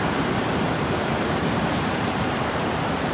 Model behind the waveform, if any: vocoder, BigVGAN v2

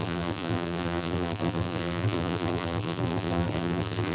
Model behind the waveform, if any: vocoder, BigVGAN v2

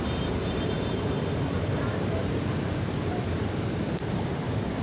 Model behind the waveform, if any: vocoder, BigVGAN v2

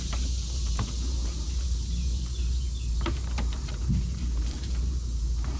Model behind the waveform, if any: vocoder, BigVGAN v2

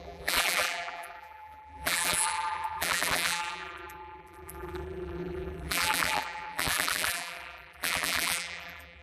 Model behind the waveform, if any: vocoder, BigVGAN v2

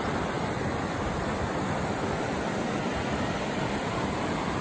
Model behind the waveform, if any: vocoder, BigVGAN v2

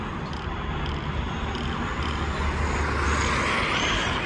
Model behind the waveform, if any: none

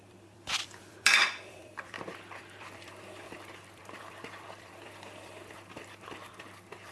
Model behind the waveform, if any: vocoder, BigVGAN v2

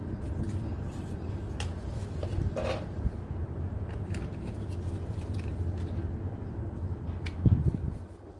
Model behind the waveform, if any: vocoder, BigVGAN v2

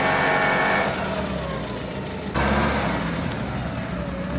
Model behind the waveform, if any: none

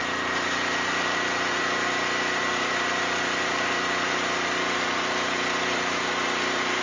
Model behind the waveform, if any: vocoder, BigVGAN v2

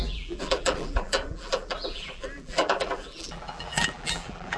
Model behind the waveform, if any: vocoder, BigVGAN v2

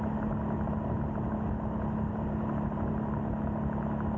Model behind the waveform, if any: none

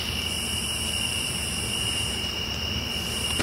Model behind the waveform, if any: vocoder, BigVGAN v2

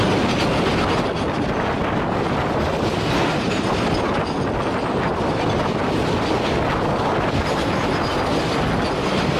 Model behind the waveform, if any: none